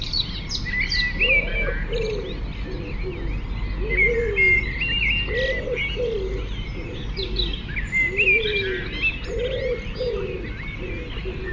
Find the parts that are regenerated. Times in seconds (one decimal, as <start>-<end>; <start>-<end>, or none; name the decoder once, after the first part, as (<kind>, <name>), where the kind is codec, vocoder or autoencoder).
none